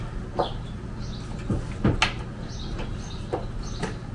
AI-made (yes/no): no